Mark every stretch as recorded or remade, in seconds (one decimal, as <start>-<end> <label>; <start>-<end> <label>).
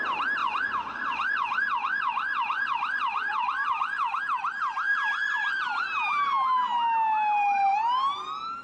0.0-0.4 recorded; 0.4-4.2 remade; 4.2-4.9 recorded; 4.9-5.6 remade; 5.6-8.6 recorded